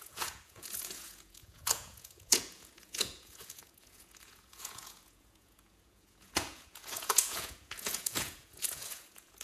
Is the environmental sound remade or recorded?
remade